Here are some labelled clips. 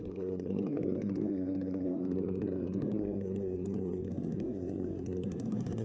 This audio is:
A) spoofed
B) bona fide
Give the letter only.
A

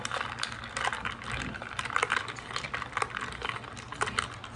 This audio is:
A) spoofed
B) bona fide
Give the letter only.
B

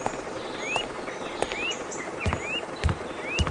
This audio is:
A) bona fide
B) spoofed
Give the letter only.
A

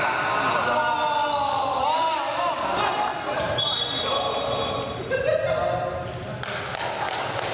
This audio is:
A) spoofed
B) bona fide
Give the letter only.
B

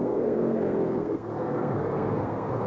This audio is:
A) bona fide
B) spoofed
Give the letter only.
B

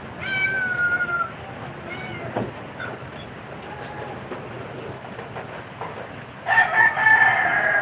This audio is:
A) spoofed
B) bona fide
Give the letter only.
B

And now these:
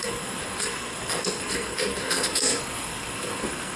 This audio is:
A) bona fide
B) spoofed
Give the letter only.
B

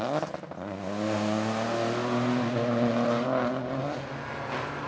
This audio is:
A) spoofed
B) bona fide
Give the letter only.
B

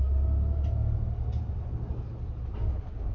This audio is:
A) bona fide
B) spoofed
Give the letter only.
A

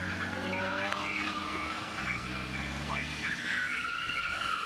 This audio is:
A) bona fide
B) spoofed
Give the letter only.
B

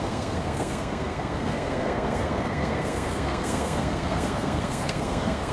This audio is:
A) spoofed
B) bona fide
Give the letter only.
A